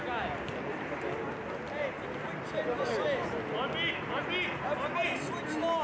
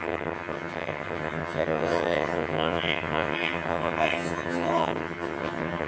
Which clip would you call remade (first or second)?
second